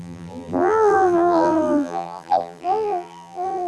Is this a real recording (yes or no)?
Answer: no